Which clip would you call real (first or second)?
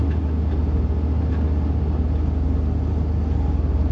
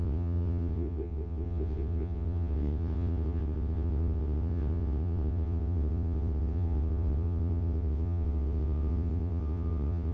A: first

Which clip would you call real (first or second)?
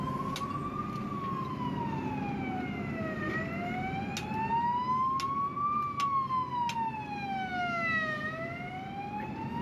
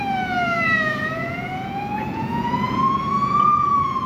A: first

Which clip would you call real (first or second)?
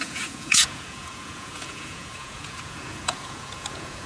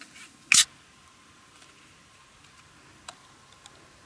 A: second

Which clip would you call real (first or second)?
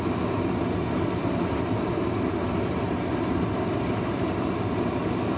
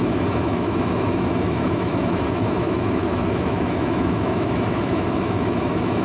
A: first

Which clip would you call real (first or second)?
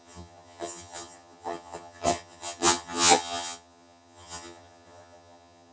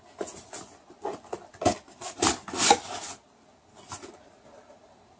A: second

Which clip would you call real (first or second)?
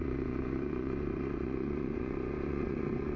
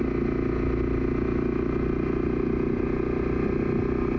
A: second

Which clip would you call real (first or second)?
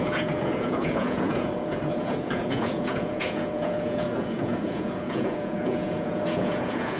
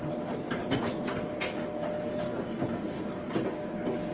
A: second